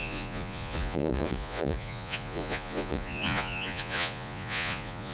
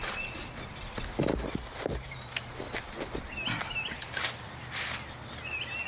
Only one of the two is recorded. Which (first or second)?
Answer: second